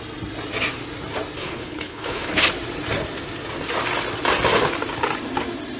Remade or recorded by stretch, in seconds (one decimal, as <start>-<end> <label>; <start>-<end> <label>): 0.0-1.4 recorded; 1.4-2.5 remade; 2.5-5.8 recorded